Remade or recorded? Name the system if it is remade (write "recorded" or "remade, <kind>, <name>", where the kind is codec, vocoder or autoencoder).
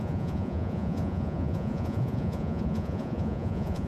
remade, vocoder, Vocos